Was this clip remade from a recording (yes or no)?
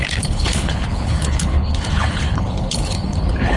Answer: yes